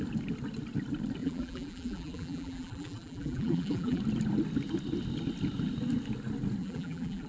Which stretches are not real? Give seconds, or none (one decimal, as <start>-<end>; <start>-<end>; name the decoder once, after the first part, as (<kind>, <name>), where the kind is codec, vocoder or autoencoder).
1.2-4.0 (vocoder, BigVGAN v2); 6.6-7.3

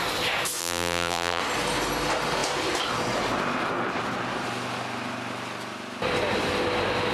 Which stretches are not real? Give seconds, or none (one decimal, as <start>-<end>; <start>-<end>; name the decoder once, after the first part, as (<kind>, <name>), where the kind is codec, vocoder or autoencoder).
0.6-1.4 (vocoder, BigVGAN v2)